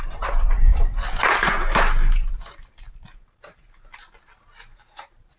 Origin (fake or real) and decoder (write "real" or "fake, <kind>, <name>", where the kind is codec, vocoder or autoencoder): fake, vocoder, BigVGAN v2